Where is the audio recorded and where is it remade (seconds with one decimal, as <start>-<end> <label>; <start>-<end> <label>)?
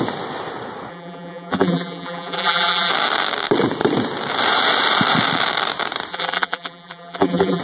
0.0-0.9 recorded; 0.9-2.9 remade; 2.9-6.1 recorded; 6.1-7.6 remade